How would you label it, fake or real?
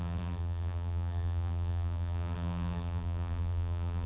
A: fake